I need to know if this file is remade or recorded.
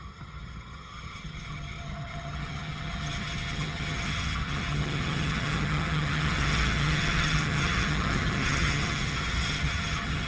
remade